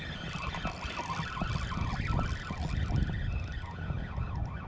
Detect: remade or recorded recorded